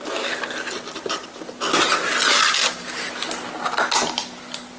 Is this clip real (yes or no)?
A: yes